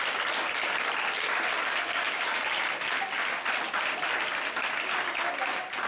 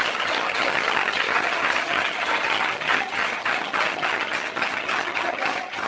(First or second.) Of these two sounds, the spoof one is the second